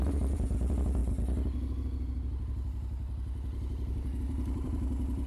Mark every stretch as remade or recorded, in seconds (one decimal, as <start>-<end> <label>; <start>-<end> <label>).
0.0-1.0 remade; 1.0-4.2 recorded; 4.2-5.3 remade